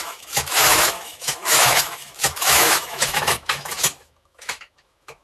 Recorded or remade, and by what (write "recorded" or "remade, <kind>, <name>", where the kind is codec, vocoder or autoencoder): remade, autoencoder, DAC-VAE